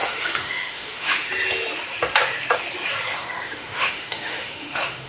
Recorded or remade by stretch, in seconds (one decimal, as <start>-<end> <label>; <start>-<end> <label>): 0.0-1.3 remade; 1.3-3.1 recorded; 3.1-5.1 remade